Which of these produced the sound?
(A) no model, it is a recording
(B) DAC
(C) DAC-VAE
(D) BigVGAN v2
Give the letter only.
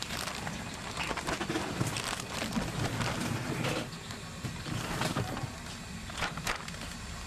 A